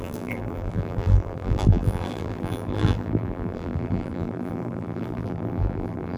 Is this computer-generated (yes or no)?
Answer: yes